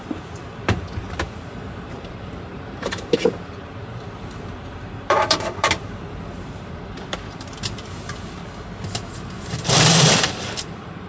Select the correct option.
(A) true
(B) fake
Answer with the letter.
B